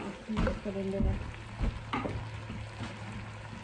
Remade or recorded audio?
recorded